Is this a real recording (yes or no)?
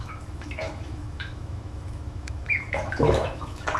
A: no